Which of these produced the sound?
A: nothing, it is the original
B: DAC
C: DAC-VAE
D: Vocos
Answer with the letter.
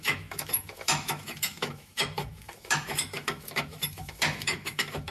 C